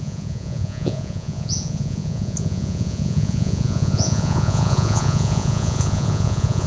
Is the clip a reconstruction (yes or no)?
yes